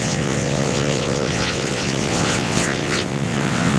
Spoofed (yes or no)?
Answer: yes